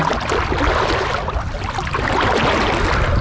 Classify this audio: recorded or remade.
recorded